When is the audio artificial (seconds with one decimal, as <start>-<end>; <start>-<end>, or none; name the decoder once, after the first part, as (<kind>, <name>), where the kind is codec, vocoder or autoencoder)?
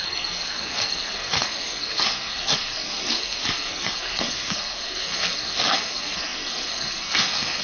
0.0-7.6 (codec, SNAC)